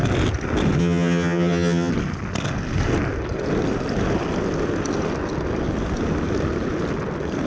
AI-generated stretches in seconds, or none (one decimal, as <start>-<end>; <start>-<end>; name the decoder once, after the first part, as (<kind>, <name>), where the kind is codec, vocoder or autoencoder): 0.8-1.9 (vocoder, HiFi-GAN)